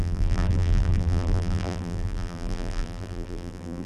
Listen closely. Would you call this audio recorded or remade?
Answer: remade